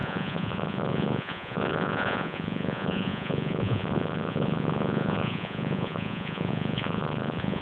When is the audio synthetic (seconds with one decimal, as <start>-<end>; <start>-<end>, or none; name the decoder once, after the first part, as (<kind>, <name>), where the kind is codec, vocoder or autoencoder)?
0.0-7.6 (vocoder, Vocos)